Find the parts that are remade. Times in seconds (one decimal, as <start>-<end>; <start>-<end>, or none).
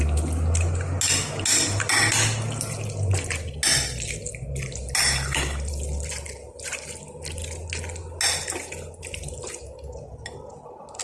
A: none